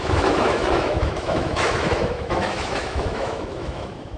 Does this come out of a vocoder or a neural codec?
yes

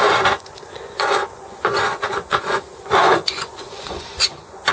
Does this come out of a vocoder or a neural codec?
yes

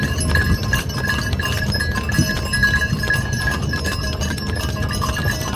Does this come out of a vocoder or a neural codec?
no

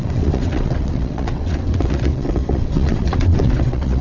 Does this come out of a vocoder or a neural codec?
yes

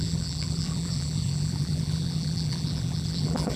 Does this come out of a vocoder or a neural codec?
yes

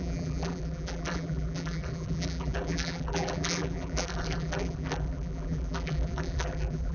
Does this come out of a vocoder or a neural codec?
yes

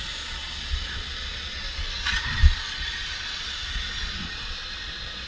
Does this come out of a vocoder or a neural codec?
yes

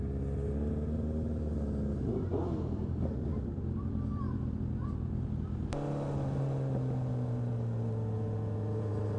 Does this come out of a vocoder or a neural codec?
no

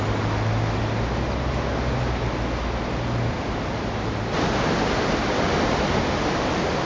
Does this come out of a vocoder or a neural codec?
no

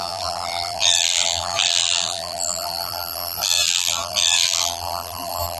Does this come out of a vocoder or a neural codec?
yes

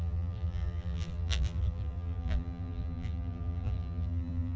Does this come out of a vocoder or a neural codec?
yes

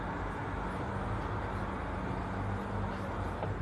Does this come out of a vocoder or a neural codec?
no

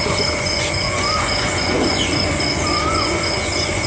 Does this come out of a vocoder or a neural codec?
yes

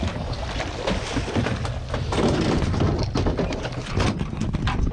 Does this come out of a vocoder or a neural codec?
no